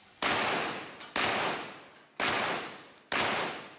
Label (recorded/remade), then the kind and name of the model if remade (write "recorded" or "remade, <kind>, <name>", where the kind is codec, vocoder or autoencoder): recorded